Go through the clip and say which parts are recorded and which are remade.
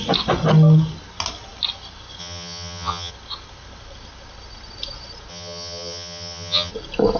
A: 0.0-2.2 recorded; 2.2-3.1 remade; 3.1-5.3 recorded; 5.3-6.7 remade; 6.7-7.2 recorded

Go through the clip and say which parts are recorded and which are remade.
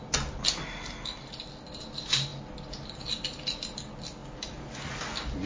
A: 0.0-5.5 recorded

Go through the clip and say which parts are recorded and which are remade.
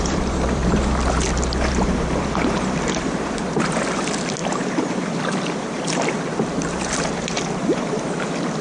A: 0.0-0.6 remade; 0.6-1.7 recorded; 1.7-8.6 remade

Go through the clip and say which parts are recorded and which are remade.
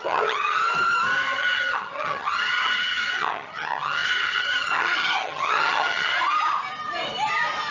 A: 0.0-0.6 remade; 0.6-1.3 recorded; 1.3-6.1 remade; 6.1-7.7 recorded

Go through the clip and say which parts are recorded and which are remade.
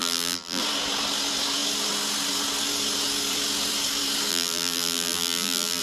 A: 0.0-0.6 remade; 0.6-4.3 recorded; 4.3-5.8 remade